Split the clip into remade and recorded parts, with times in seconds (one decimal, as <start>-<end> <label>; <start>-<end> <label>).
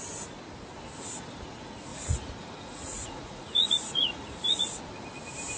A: 0.0-1.9 recorded; 1.9-4.8 remade; 4.8-5.6 recorded